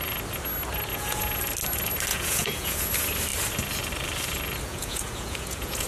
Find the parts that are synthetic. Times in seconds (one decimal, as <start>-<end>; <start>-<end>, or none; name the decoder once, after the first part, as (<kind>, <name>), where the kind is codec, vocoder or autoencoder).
0.9-1.4 (vocoder, Vocos); 2.1-2.9; 4.7-5.9